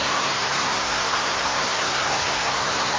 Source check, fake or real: fake